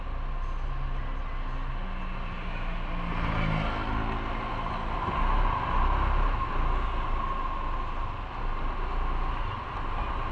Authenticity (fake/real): real